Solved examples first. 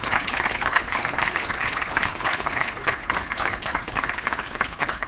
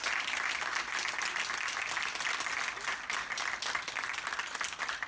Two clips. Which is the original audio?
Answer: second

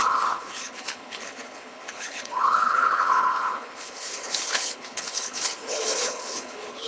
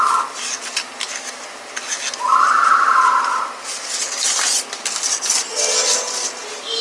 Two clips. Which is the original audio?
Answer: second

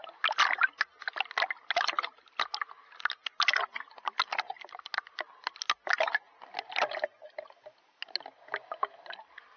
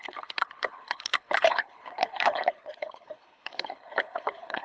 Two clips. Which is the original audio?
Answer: first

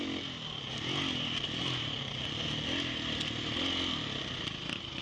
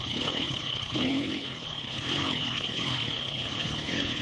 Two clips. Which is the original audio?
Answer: first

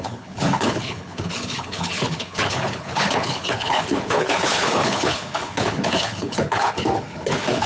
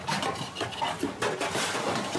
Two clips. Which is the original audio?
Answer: second